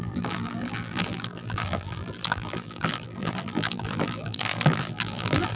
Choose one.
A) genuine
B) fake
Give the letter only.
B